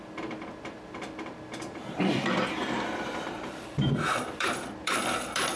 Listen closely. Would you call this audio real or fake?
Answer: fake